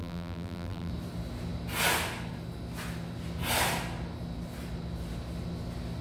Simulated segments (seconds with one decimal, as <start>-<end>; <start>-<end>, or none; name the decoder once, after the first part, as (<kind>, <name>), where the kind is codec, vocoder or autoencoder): 0.0-0.9 (vocoder, BigVGAN v2)